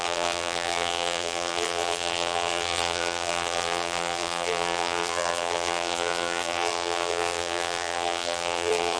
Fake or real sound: fake